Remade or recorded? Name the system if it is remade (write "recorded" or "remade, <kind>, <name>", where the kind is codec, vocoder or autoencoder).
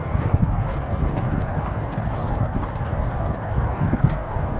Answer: remade, codec, DAC